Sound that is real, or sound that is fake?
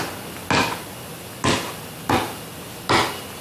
real